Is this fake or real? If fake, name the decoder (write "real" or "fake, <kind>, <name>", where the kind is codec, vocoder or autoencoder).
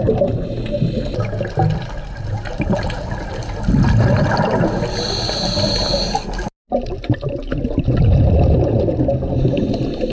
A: real